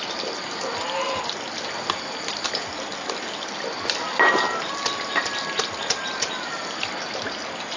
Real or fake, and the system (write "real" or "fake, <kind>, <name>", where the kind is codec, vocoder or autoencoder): real